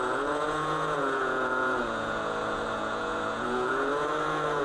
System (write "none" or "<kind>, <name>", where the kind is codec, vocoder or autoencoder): vocoder, Vocos